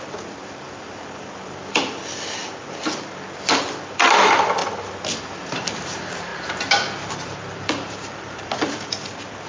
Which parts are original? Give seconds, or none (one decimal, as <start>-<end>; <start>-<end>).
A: 2.4-3.8; 4.6-5.2; 6.3-7.1